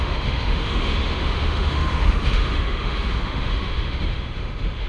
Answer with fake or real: fake